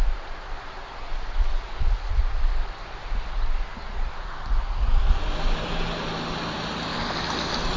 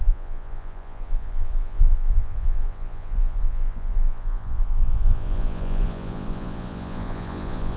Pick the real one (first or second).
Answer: first